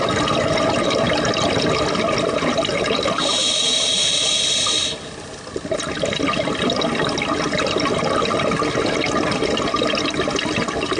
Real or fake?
real